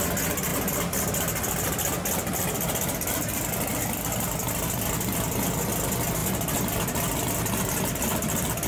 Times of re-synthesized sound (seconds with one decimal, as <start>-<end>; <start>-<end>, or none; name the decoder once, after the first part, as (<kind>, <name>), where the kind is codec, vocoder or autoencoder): none